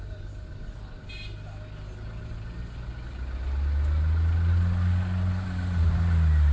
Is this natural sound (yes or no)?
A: yes